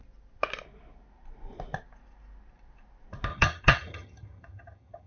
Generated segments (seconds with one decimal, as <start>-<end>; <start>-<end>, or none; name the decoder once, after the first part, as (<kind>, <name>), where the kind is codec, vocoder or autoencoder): 3.3-5.1 (vocoder, HiFi-GAN)